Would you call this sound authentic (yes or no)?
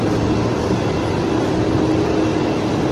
yes